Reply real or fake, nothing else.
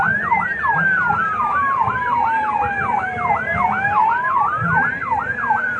fake